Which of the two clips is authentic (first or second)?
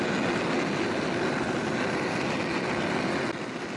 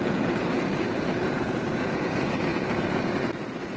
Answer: first